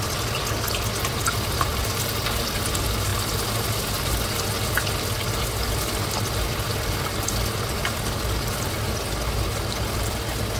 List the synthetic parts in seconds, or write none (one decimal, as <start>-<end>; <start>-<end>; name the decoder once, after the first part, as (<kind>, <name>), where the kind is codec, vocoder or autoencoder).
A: none